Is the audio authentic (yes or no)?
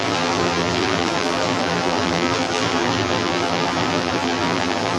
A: no